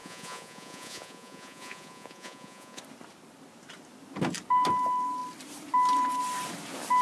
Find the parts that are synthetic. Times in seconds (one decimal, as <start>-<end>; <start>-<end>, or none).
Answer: 0.0-2.8